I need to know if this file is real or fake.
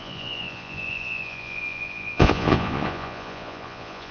fake